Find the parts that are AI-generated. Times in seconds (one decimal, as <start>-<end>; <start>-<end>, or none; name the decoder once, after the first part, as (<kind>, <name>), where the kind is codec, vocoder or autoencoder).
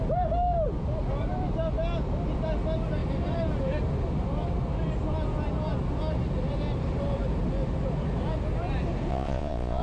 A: 9.1-9.8 (vocoder, Vocos)